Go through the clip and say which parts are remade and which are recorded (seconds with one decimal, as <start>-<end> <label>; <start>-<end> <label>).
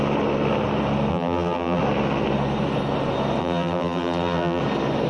0.0-1.1 recorded; 1.1-1.8 remade; 1.8-3.4 recorded; 3.4-4.6 remade; 4.6-5.1 recorded